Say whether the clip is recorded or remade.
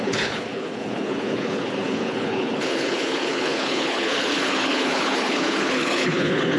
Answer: remade